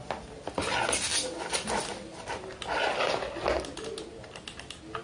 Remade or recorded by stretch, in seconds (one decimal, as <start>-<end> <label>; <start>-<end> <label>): 0.0-5.0 recorded